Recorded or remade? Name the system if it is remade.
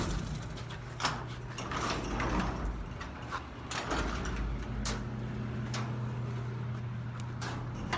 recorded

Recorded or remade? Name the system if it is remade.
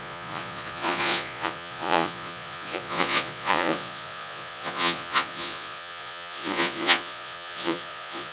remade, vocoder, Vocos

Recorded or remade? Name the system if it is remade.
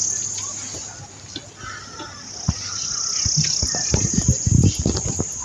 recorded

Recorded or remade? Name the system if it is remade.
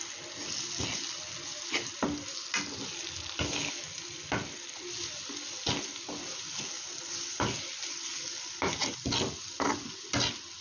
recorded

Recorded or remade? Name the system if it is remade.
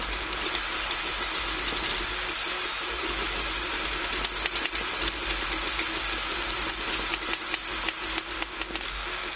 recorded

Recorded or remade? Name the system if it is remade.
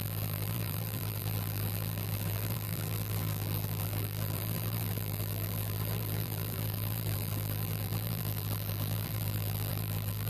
remade, vocoder, BigVGAN v2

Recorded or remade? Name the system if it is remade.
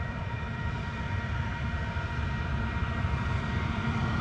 remade, vocoder, BigVGAN v2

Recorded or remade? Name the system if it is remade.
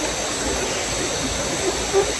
recorded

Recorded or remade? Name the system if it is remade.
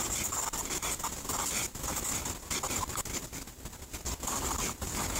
remade, vocoder, BigVGAN v2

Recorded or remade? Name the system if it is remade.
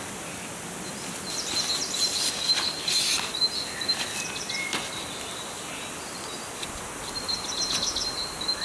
recorded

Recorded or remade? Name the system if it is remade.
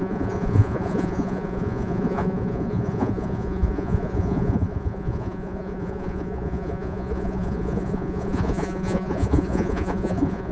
remade, vocoder, Vocos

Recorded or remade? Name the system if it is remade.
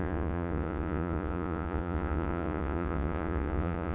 remade, vocoder, Vocos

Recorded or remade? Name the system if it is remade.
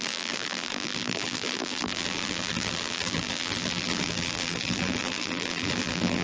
remade, vocoder, BigVGAN v2